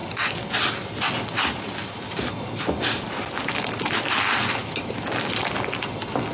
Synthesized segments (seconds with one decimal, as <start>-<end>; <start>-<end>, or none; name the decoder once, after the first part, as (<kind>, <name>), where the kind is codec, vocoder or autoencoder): none

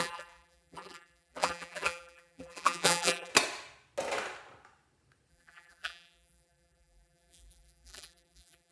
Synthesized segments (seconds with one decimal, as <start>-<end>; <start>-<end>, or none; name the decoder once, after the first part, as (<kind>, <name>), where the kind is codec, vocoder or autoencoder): 0.0-3.3 (vocoder, BigVGAN v2); 5.3-8.7

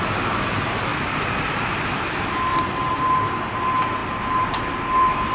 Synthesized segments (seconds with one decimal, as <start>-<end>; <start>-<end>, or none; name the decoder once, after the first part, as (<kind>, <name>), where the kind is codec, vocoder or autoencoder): 2.5-3.1 (vocoder, BigVGAN v2); 4.0-5.3

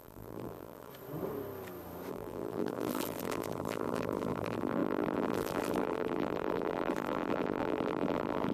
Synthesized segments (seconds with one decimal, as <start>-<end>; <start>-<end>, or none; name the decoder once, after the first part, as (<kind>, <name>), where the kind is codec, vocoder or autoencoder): 0.0-0.9 (vocoder, BigVGAN v2); 2.1-8.5

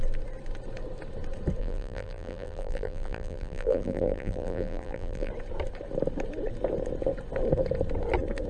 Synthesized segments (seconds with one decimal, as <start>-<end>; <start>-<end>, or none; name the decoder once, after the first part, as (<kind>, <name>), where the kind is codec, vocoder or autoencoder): 1.6-5.3 (vocoder, BigVGAN v2)

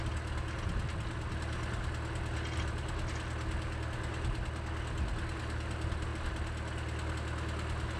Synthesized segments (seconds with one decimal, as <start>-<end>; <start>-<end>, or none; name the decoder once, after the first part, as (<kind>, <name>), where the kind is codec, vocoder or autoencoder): none

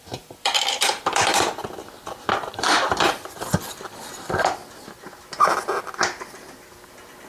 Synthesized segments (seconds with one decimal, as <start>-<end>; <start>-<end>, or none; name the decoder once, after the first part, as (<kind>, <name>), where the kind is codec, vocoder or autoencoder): 0.0-4.6 (vocoder, BigVGAN v2); 6.7-7.3

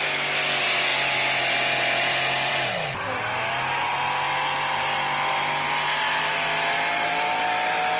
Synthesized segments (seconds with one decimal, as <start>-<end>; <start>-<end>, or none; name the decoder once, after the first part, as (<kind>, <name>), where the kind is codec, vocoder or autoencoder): none